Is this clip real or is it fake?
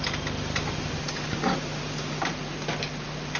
real